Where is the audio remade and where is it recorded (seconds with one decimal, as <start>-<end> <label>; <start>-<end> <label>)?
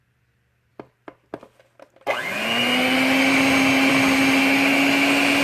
0.0-5.4 recorded